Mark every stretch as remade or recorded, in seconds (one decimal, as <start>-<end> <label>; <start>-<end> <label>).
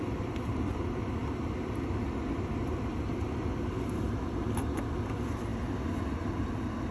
0.0-6.9 recorded